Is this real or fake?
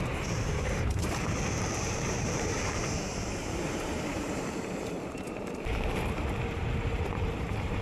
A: fake